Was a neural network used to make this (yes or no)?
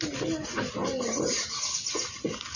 no